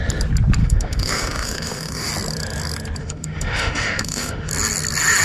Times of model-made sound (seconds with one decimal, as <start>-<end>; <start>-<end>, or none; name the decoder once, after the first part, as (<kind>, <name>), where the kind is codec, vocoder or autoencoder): 0.6-2.1 (autoencoder, DAC-VAE); 3.0-4.5